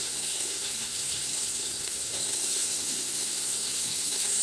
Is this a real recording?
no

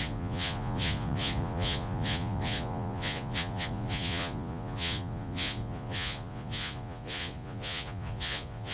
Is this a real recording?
no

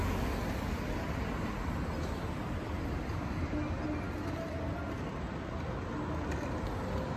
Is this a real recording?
yes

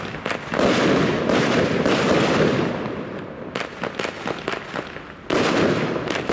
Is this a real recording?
yes